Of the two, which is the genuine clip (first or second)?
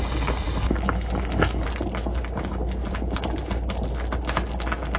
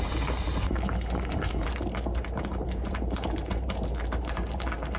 first